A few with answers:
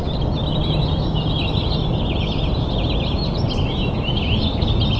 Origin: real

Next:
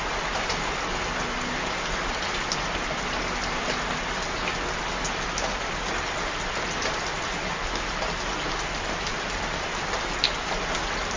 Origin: real